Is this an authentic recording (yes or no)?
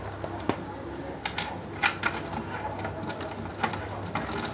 yes